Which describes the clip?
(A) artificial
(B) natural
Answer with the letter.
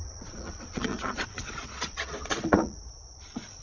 A